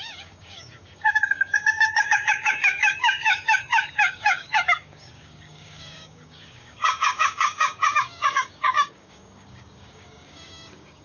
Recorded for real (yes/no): no